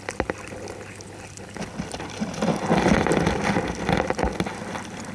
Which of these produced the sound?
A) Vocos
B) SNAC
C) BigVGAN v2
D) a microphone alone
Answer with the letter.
D